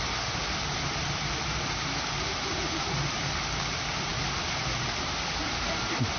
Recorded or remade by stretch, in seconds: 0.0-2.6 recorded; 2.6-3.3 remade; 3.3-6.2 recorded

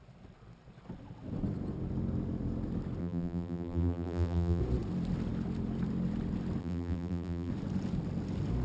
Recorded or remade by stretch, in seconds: 0.0-3.0 recorded; 3.0-4.6 remade; 4.6-6.6 recorded; 6.6-7.5 remade; 7.5-8.6 recorded

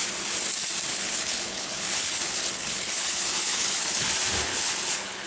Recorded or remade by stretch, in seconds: 0.0-0.9 recorded; 0.9-4.1 remade; 4.1-4.5 recorded; 4.5-5.3 remade

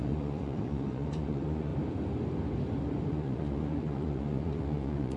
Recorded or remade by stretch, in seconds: 0.0-1.7 remade; 1.7-3.1 recorded; 3.1-5.2 remade

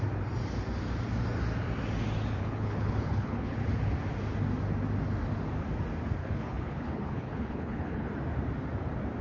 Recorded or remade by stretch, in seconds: 0.0-2.4 recorded; 2.4-3.6 remade; 3.6-6.2 recorded; 6.2-8.1 remade; 8.1-9.2 recorded

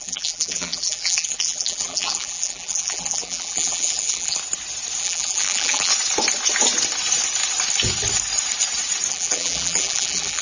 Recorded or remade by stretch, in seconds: 0.0-4.4 remade; 4.4-5.0 recorded; 5.0-5.9 remade; 5.9-9.1 recorded; 9.1-10.4 remade

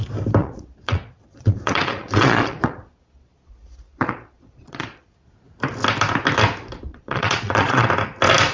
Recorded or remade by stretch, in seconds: 0.0-0.4 recorded; 0.4-5.3 remade; 5.3-6.9 recorded; 6.9-7.9 remade; 7.9-8.5 recorded